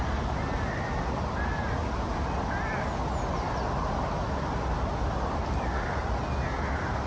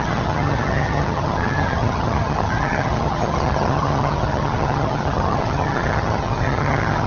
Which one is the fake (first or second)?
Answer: second